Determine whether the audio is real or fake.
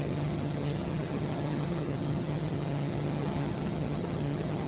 fake